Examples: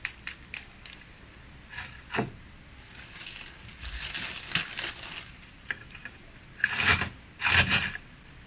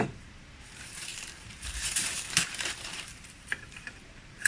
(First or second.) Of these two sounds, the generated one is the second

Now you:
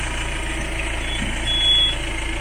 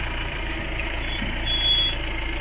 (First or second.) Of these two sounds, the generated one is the second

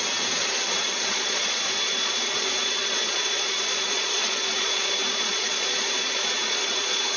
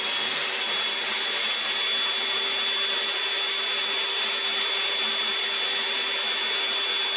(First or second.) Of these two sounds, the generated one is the first